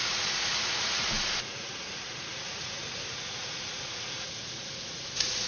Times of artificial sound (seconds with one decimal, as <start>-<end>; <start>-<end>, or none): 0.0-5.5